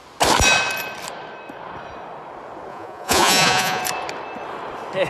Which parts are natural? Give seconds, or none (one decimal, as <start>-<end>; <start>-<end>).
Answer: 0.0-2.7; 3.8-5.1